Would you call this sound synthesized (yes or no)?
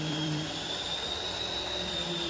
yes